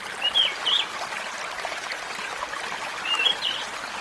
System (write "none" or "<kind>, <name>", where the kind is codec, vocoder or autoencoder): none